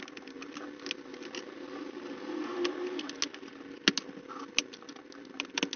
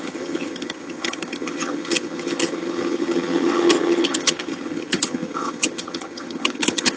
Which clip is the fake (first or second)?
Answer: second